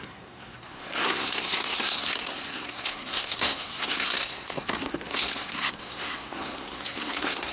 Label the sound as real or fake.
fake